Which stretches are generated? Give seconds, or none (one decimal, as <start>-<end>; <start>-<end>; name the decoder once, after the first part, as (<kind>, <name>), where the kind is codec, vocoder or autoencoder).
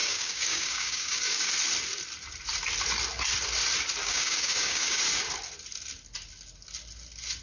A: 0.0-1.5 (codec, DAC); 4.0-5.0